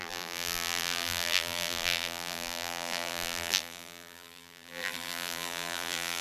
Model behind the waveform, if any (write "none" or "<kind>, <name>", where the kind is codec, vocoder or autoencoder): vocoder, BigVGAN v2